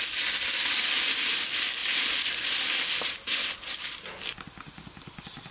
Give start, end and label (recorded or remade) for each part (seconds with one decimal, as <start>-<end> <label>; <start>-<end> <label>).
0.0-5.5 recorded